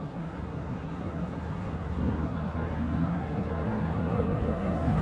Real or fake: fake